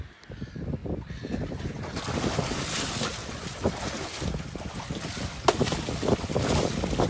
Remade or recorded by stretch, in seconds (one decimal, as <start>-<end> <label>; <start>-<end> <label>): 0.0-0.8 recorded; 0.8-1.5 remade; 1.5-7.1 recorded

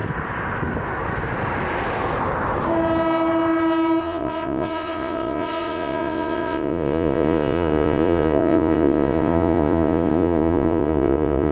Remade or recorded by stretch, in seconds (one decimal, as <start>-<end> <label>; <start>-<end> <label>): 0.0-4.0 recorded; 4.0-11.5 remade

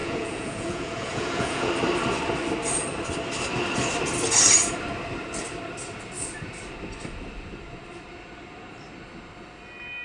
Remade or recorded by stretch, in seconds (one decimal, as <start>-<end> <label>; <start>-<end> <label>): 0.0-1.7 remade; 1.7-10.0 recorded